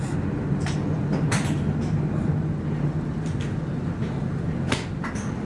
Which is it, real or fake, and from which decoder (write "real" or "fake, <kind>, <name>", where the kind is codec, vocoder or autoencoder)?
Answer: real